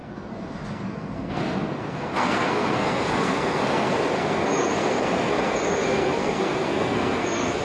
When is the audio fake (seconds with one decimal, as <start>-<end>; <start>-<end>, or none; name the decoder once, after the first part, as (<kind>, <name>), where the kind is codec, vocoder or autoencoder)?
0.0-7.6 (codec, SNAC)